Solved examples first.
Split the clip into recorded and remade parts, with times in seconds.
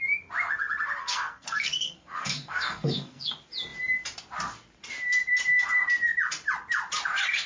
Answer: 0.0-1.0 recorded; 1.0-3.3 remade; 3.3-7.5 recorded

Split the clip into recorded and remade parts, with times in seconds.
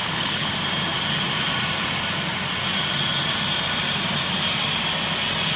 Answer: 0.0-0.5 remade; 0.5-5.6 recorded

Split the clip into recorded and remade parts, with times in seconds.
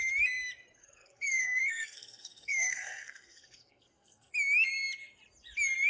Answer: 0.0-0.8 recorded; 0.8-4.3 remade; 4.3-5.9 recorded